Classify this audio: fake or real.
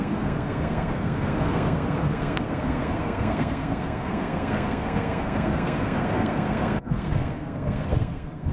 fake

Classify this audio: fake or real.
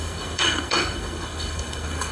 fake